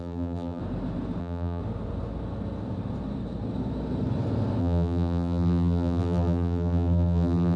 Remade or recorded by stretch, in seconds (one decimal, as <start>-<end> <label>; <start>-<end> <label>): 0.0-0.6 remade; 0.6-1.2 recorded; 1.2-1.6 remade; 1.6-4.6 recorded; 4.6-7.6 remade